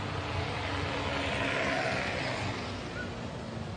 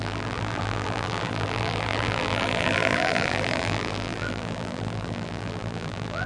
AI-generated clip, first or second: second